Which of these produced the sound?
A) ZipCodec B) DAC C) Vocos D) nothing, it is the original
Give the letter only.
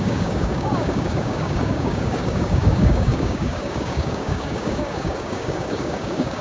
B